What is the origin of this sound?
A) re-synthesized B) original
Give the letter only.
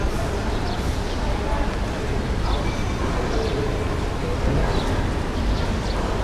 B